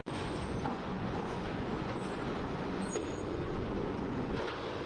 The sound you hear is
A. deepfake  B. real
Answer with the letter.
A